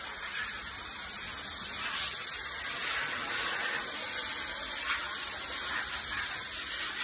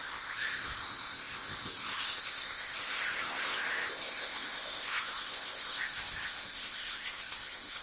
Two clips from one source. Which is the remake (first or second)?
second